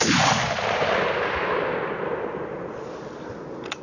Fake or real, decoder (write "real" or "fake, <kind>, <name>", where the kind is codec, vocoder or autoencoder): real